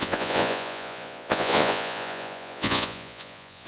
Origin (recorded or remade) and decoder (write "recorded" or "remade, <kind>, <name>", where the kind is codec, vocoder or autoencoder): remade, vocoder, Vocos